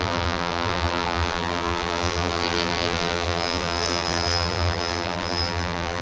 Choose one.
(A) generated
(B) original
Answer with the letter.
A